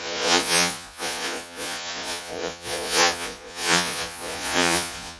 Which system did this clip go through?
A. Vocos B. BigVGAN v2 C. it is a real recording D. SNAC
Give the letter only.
A